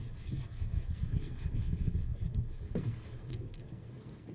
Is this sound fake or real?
fake